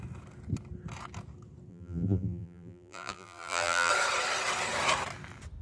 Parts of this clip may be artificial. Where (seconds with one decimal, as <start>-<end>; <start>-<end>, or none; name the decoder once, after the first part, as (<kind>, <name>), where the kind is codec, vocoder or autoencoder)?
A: 1.7-3.9 (vocoder, BigVGAN v2)